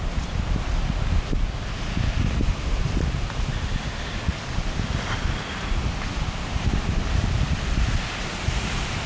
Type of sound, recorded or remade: recorded